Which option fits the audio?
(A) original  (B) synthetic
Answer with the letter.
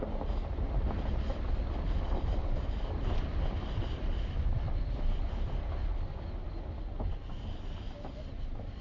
A